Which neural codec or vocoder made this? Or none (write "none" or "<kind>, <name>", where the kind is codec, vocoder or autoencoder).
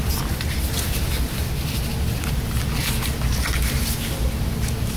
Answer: none